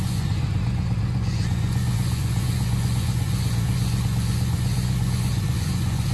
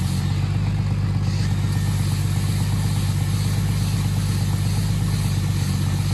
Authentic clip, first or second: second